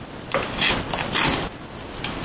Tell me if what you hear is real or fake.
real